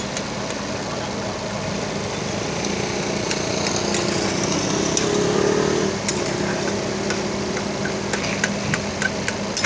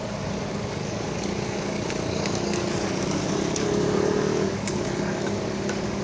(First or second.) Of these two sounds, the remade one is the second